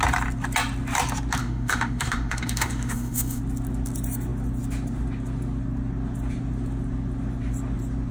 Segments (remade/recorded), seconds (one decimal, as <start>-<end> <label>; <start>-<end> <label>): 0.0-1.4 recorded; 1.4-3.4 remade; 3.4-8.1 recorded